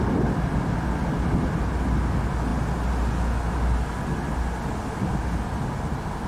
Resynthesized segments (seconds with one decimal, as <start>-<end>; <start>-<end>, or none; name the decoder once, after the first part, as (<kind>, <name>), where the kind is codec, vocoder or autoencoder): none